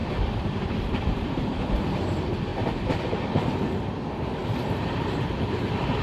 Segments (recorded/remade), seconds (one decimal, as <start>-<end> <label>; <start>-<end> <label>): 0.0-1.3 remade; 1.3-2.5 recorded; 2.5-3.0 remade; 3.0-4.4 recorded; 4.4-5.2 remade; 5.2-6.0 recorded